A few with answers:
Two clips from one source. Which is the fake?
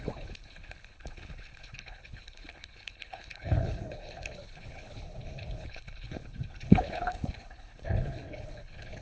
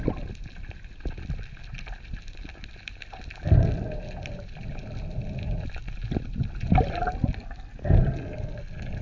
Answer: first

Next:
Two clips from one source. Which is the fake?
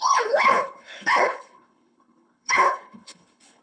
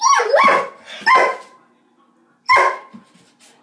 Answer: first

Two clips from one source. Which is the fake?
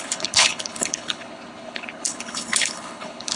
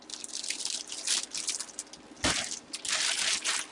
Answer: first